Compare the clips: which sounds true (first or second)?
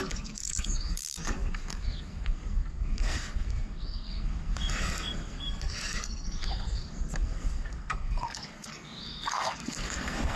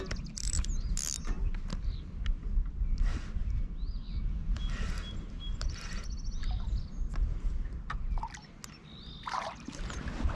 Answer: second